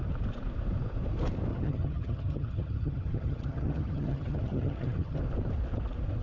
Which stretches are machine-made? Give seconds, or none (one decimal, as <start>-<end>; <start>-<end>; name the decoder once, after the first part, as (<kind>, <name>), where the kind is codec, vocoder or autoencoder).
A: 1.5-5.2 (vocoder, HiFi-GAN)